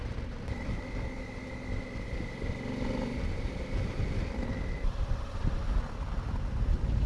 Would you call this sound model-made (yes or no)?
no